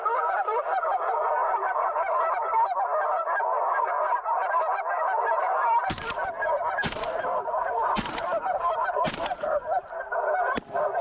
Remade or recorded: remade